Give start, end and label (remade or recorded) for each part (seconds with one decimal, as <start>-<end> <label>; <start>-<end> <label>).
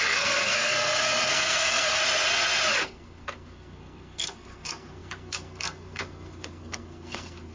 0.0-2.0 remade; 2.0-2.8 recorded; 2.8-7.5 remade